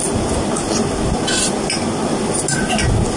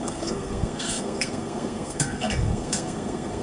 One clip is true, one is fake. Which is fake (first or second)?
second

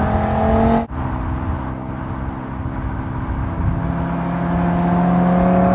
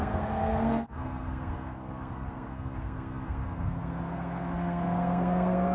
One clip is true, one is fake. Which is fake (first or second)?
second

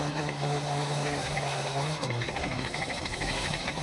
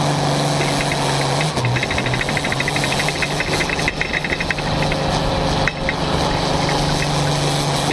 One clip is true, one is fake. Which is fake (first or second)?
first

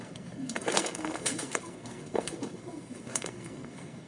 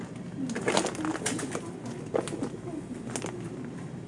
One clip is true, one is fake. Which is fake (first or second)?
first